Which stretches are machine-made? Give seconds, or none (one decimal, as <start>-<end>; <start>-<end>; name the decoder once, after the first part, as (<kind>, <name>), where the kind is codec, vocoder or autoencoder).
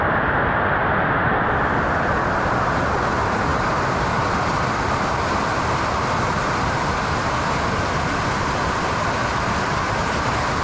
none